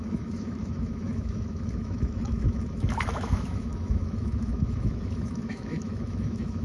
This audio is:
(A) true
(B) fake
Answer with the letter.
B